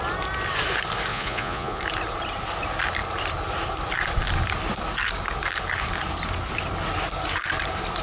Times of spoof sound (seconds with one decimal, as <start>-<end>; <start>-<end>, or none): 1.1-1.8